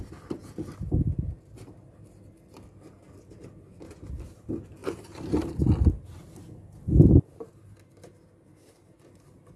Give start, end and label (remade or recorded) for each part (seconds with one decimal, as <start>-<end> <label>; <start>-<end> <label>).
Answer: 0.0-9.6 recorded